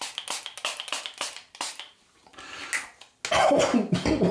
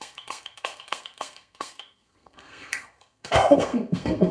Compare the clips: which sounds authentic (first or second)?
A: first